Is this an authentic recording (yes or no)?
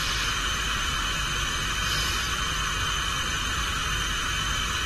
no